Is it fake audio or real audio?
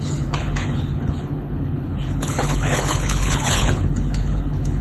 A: fake